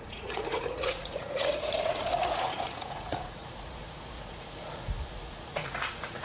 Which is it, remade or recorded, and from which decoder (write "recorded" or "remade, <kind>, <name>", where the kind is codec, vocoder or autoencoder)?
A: remade, vocoder, Vocos